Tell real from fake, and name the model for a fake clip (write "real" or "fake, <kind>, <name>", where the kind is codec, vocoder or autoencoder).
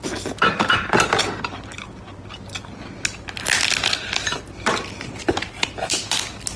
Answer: real